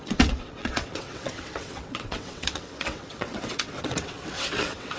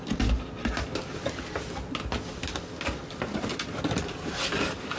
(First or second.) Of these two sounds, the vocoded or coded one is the first